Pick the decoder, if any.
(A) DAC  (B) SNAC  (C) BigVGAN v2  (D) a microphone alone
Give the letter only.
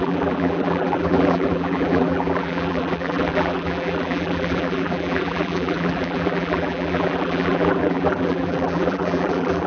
C